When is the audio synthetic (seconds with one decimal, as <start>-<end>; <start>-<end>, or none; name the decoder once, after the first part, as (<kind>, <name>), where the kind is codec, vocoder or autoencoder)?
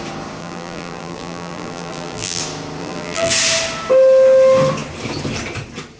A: 0.4-2.4 (vocoder, BigVGAN v2); 2.8-3.3